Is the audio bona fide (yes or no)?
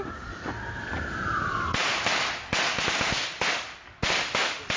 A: yes